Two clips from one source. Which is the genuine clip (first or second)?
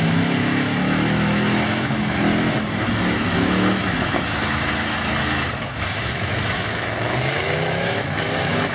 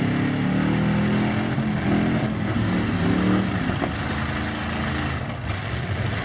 second